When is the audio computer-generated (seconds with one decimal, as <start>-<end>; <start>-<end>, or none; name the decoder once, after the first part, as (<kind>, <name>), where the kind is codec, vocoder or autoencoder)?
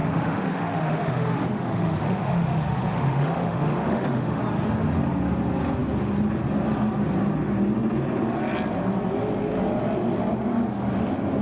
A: 0.0-4.4 (autoencoder, DAC-VAE)